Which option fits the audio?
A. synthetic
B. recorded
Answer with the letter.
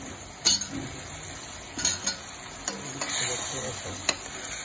B